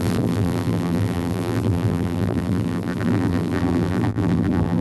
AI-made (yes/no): yes